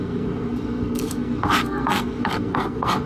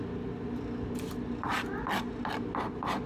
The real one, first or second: second